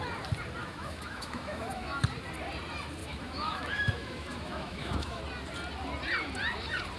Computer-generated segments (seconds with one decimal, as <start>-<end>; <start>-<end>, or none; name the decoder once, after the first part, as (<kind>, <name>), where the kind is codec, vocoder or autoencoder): 0.6-2.0 (autoencoder, DAC-VAE); 3.0-5.2